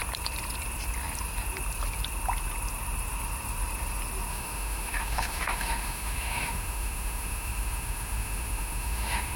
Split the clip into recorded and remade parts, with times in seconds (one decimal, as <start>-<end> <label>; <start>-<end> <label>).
0.0-4.3 recorded; 4.3-9.4 remade

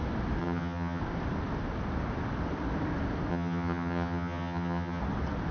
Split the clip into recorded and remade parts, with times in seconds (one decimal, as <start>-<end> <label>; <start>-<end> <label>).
0.0-0.4 recorded; 0.4-1.0 remade; 1.0-3.3 recorded; 3.3-5.0 remade; 5.0-5.5 recorded

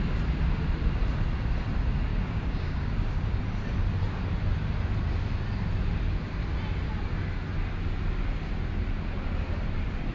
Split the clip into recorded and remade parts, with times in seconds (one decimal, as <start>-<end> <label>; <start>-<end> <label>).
0.0-2.1 recorded; 2.1-3.4 remade; 3.4-10.1 recorded

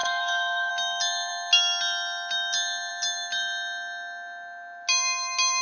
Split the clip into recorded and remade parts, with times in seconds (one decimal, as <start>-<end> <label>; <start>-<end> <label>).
0.0-0.7 remade; 0.7-5.6 recorded